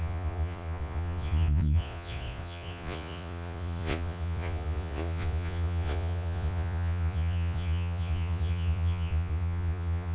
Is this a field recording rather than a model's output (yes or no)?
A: no